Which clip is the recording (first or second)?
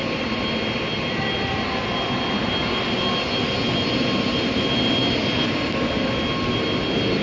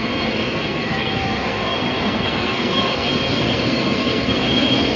first